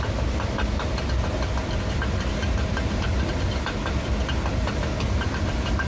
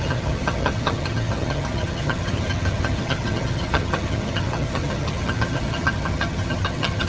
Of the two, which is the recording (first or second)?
first